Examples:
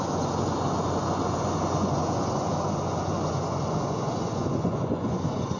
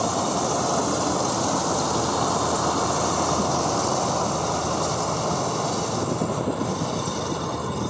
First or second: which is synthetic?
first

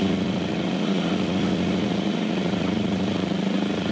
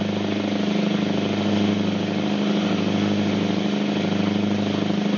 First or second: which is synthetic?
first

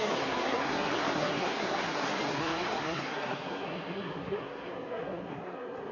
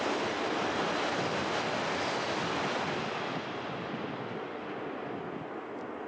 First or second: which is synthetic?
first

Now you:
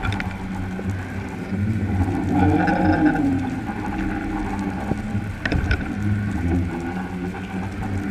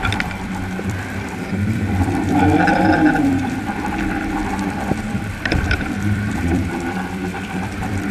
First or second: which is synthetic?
second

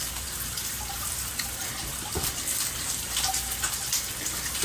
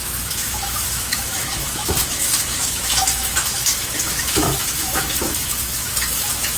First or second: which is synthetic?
second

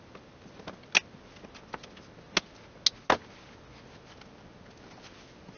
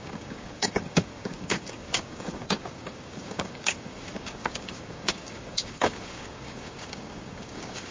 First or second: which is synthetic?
second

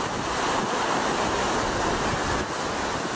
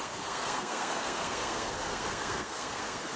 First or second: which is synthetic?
second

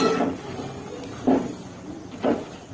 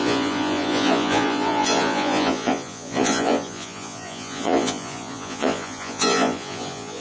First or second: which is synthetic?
second